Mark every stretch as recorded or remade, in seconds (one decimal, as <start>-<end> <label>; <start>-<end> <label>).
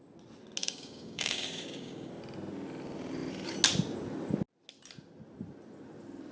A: 0.0-0.6 recorded; 0.6-2.1 remade; 2.1-6.3 recorded